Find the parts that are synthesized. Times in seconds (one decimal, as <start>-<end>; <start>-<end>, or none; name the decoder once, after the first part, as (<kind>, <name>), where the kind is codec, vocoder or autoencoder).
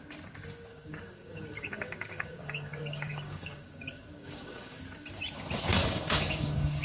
0.7-4.8 (codec, DAC); 5.7-6.8